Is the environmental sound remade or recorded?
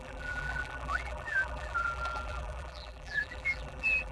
remade